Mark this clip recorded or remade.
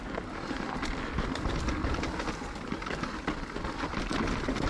recorded